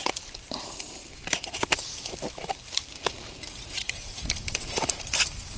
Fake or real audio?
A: fake